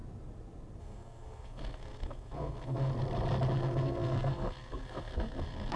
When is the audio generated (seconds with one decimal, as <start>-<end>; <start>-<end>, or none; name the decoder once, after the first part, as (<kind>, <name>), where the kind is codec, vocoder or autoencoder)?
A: 0.8-2.9 (codec, SNAC); 3.5-5.8